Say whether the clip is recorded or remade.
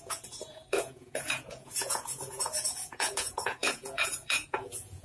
remade